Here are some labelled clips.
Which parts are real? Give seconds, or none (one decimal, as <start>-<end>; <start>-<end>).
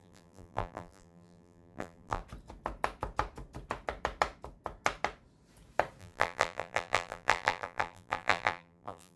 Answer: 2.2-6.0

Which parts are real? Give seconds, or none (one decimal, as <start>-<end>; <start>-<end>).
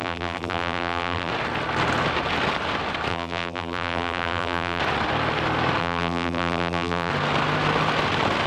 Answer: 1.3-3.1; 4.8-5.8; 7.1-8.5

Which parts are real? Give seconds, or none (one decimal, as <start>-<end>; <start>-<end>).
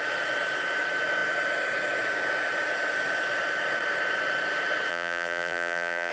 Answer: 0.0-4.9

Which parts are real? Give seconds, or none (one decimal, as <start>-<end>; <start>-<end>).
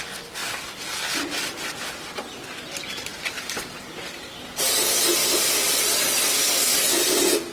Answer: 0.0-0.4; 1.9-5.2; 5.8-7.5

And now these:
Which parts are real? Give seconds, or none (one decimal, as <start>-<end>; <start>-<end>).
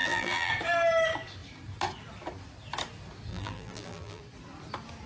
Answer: 0.5-3.3; 4.2-5.1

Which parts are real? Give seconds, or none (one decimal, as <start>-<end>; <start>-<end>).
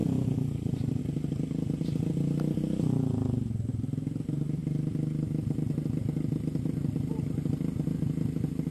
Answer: 1.0-8.7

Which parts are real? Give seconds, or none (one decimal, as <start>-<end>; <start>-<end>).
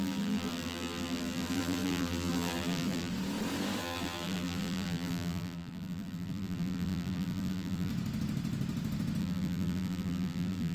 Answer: 3.1-3.8; 7.9-9.2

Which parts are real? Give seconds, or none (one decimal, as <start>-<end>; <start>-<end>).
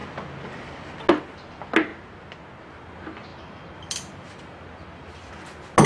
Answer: 0.0-3.3; 5.3-5.9